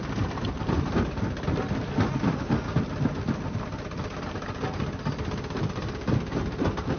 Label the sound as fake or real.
real